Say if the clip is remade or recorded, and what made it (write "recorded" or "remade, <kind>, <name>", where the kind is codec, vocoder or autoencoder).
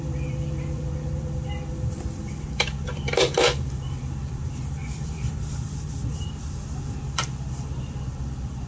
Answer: remade, vocoder, BigVGAN v2